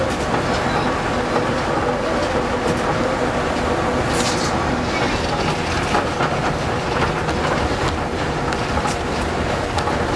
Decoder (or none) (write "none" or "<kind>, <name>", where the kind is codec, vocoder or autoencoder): none